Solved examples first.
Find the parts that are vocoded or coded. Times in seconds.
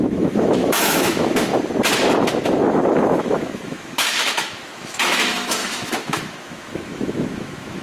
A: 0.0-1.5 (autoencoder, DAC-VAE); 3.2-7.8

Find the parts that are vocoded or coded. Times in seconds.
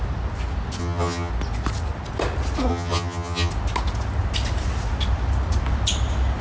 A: 0.8-1.3 (vocoder, HiFi-GAN); 2.7-3.5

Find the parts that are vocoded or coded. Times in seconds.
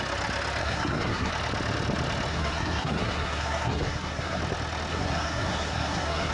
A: 0.6-1.3 (codec, SNAC); 2.3-4.4; 4.9-6.3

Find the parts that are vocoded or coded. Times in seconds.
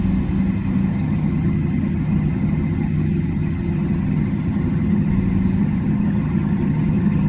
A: 0.9-5.1 (vocoder, HiFi-GAN); 5.6-7.3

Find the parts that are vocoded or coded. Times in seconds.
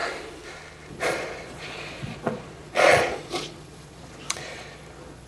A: 0.9-5.3 (vocoder, Vocos)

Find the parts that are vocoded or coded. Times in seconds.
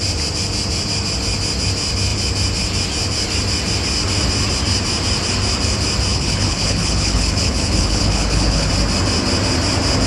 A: 6.1-8.7 (codec, HILCodec)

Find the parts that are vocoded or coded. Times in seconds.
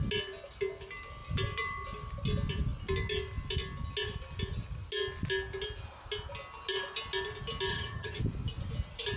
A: 7.7-8.2 (vocoder, HiFi-GAN)